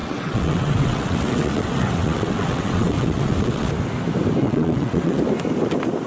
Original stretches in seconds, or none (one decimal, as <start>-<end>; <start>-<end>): 3.7-4.4; 5.2-6.1